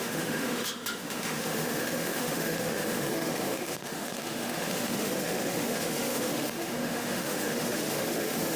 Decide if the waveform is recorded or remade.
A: remade